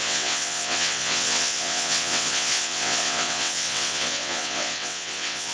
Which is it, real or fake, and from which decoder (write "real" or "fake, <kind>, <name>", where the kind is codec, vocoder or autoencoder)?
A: fake, vocoder, WaveNeXt